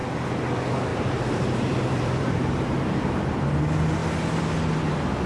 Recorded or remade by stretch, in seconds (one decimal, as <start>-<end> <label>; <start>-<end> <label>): 0.0-0.9 recorded; 0.9-3.2 remade; 3.2-5.3 recorded